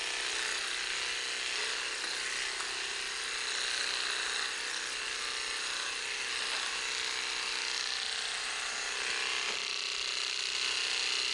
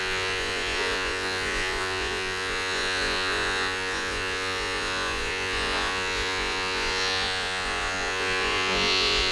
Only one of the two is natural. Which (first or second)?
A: first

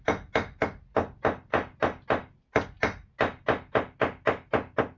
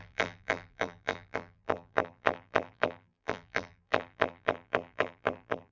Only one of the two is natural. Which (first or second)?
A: first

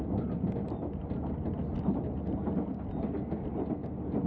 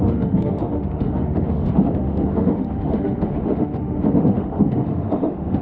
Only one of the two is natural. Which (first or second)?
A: first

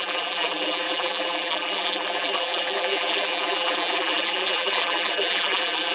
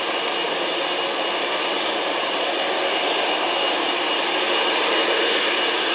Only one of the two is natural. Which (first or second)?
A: second